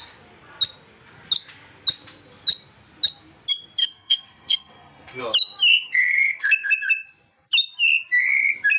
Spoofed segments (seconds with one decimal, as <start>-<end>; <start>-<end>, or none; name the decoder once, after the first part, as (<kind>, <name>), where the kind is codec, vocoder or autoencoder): 3.8-5.2 (codec, SNAC); 5.7-6.7